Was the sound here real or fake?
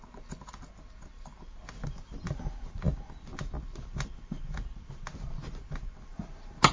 real